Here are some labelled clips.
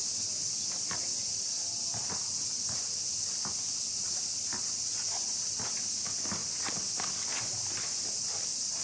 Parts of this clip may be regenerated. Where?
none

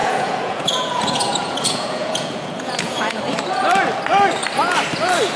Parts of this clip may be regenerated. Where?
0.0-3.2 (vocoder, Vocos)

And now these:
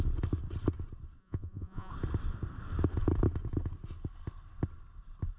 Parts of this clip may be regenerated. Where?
1.2-1.9 (vocoder, Vocos)

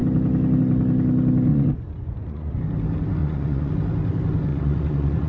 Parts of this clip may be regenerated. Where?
1.5-2.6 (vocoder, Vocos); 3.2-3.7; 4.5-5.3

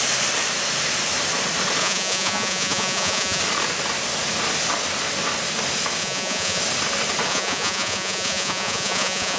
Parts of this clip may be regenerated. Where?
1.8-3.4 (vocoder, Vocos); 6.0-6.6; 7.3-9.4

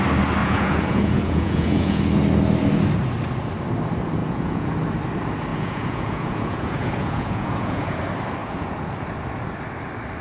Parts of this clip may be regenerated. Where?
0.4-2.0 (vocoder, Vocos); 4.2-4.7; 5.5-8.0; 8.4-8.9

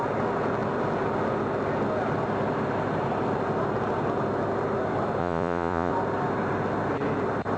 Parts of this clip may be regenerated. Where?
5.2-5.9 (vocoder, Vocos)